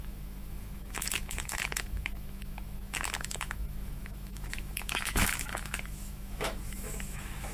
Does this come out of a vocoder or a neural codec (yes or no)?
yes